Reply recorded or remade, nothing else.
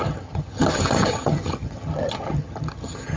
remade